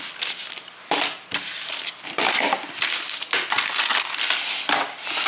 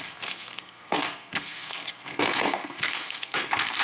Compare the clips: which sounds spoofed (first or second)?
second